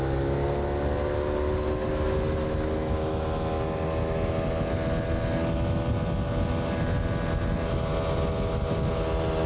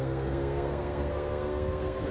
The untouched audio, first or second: first